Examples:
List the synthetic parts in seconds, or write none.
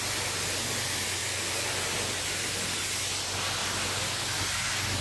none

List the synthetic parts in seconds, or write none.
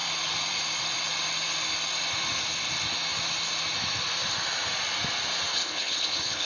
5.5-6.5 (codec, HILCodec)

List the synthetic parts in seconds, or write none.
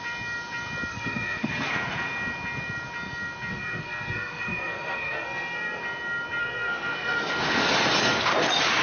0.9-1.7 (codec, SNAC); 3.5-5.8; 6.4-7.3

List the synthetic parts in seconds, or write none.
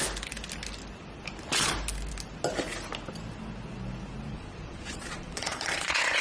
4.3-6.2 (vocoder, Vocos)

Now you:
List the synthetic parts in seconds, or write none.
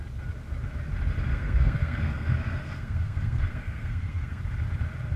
1.3-4.4 (codec, SNAC)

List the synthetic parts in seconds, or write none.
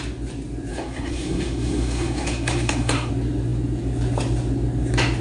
0.7-3.1 (codec, SNAC)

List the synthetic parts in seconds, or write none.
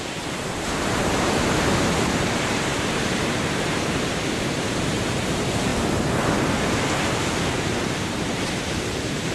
0.0-5.7 (vocoder, BigVGAN v2); 7.5-9.3